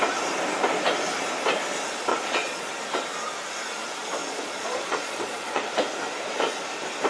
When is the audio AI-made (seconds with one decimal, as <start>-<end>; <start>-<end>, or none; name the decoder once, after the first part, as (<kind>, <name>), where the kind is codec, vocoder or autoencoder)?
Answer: 2.1-2.7 (vocoder, Vocos); 4.2-5.7